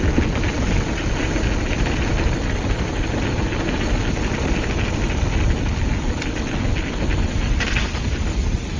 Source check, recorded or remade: recorded